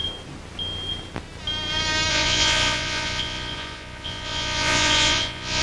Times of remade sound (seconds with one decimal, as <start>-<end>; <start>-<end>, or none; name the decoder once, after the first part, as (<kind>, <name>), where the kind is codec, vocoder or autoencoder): 2.1-5.6 (vocoder, Vocos)